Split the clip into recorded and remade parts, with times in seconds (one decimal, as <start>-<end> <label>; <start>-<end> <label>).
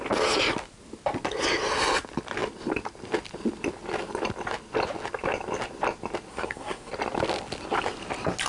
0.0-6.3 recorded; 6.3-6.9 remade; 6.9-8.5 recorded